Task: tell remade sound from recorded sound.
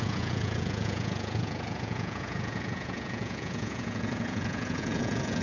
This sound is remade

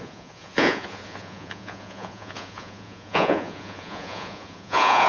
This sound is remade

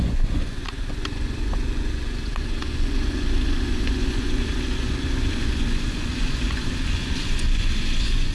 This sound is remade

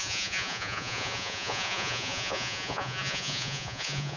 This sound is remade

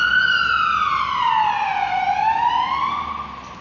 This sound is recorded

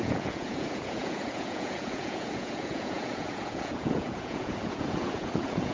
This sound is remade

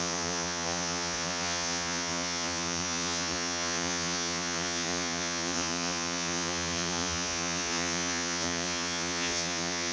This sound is remade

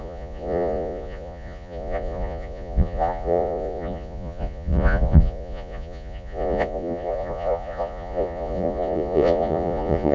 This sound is remade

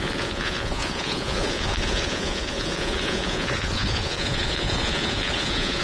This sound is remade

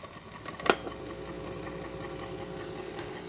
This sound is recorded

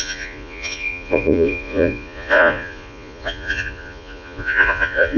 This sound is remade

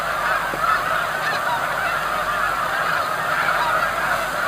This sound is recorded